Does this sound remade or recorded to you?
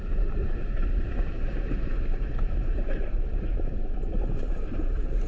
remade